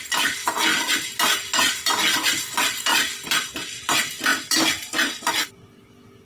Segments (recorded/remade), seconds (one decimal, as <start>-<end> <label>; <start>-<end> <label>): 0.0-6.2 recorded